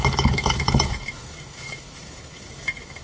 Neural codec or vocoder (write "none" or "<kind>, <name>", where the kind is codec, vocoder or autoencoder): autoencoder, DAC-VAE